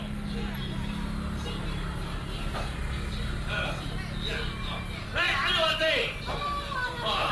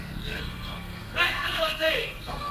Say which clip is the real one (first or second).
first